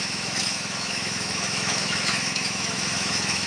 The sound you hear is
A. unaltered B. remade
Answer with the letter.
B